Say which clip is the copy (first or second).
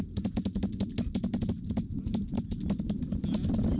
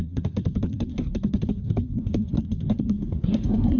second